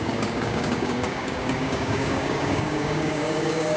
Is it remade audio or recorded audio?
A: remade